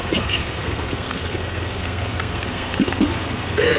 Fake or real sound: fake